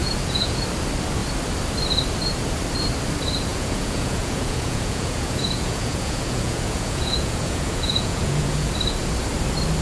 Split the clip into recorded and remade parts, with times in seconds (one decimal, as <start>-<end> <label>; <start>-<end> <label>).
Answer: 0.0-0.6 remade; 0.6-3.5 recorded; 3.5-8.7 remade; 8.7-9.8 recorded